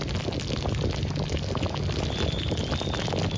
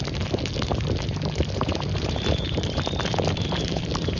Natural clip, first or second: first